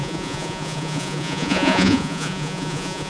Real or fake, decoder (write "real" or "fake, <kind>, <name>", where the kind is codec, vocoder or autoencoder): fake, vocoder, Vocos